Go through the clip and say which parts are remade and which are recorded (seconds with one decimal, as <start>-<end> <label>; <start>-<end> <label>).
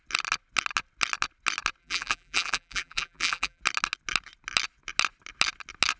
0.0-1.8 recorded; 1.8-3.6 remade; 3.6-6.0 recorded